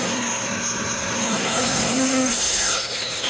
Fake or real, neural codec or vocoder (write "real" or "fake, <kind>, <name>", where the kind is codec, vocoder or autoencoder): fake, codec, SNAC